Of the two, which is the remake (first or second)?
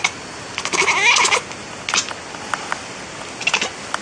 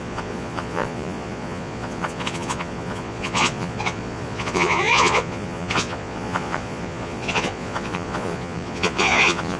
second